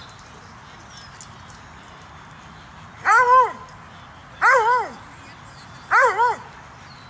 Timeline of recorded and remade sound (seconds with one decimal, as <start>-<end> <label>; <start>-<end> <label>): 0.0-7.1 recorded